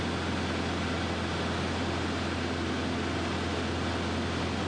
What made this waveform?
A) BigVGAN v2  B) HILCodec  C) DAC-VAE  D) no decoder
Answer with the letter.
D